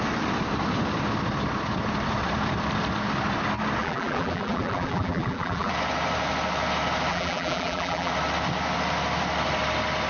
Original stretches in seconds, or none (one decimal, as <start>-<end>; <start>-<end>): 0.0-3.8; 5.7-7.1; 8.1-10.1